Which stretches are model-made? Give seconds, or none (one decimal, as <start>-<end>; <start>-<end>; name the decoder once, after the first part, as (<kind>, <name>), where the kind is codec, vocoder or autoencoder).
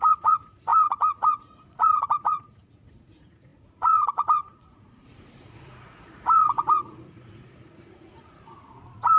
0.0-9.2 (vocoder, Vocos)